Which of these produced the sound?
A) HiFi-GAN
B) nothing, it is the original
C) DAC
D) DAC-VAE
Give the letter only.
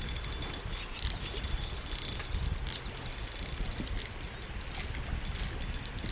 B